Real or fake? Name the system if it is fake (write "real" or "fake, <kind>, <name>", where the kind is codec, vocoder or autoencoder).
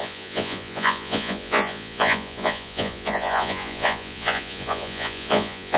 fake, vocoder, Vocos